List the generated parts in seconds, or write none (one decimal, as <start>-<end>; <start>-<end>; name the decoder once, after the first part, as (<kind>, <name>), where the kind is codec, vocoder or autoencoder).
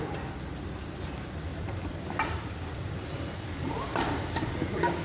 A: 1.5-4.5 (vocoder, BigVGAN v2)